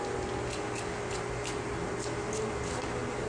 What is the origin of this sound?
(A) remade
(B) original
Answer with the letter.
B